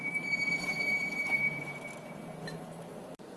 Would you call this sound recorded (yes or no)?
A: no